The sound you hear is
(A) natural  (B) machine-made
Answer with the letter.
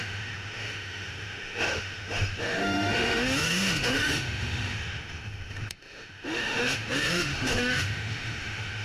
B